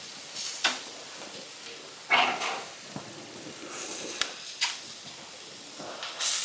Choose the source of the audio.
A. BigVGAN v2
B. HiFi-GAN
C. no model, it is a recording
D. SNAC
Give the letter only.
C